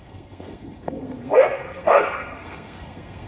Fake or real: fake